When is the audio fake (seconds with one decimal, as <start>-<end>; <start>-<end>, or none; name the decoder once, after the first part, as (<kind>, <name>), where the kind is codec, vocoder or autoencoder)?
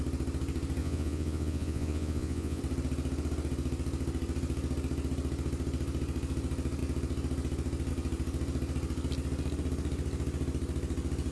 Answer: 0.8-2.6 (vocoder, Vocos)